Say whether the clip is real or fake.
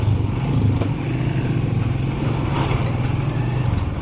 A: real